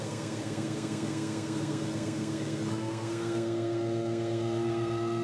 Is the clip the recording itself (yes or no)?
no